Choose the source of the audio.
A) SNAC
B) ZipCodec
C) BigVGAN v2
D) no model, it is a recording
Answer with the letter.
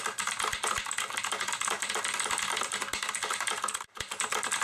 D